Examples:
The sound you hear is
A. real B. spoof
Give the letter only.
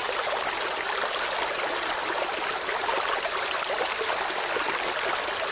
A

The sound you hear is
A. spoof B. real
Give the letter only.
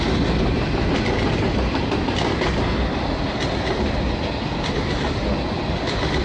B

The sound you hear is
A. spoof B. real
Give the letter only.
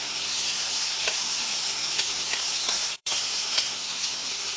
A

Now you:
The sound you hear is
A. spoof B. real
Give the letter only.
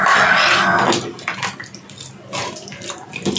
B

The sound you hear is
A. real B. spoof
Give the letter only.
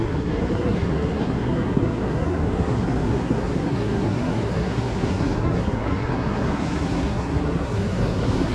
B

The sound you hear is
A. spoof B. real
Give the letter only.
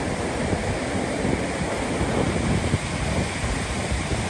B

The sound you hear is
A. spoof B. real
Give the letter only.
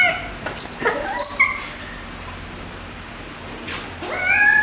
B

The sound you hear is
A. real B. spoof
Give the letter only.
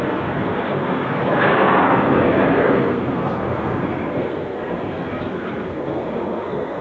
B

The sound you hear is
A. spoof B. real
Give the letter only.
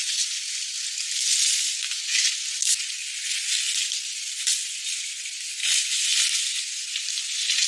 B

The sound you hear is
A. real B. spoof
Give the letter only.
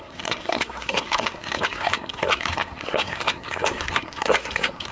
B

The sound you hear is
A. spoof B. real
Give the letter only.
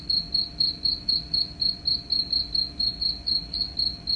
B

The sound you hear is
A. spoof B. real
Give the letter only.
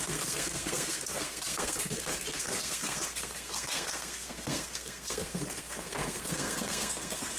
A